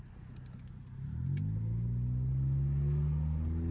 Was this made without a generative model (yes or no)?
yes